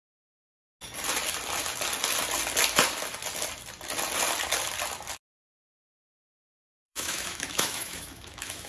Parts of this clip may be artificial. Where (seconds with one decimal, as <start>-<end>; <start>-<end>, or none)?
5.6-8.7